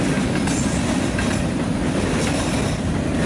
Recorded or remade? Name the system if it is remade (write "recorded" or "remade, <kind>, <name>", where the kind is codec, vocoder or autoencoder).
recorded